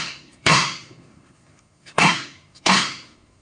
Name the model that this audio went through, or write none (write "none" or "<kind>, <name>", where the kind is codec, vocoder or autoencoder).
codec, SNAC